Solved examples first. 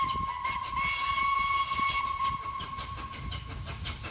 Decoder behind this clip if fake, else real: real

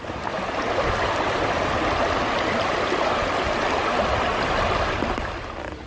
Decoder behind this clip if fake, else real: real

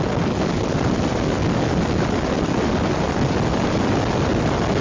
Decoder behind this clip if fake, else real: real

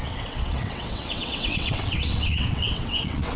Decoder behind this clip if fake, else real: fake, vocoder, WaveNeXt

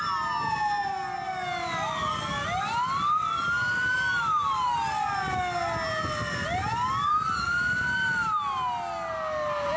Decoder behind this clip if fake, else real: real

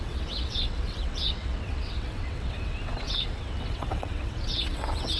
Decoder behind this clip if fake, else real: fake, vocoder, WaveNeXt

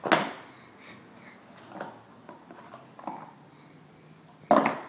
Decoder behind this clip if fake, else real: real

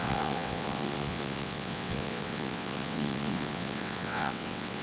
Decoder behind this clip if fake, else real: fake, vocoder, WaveNeXt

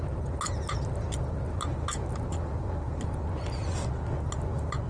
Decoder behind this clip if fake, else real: real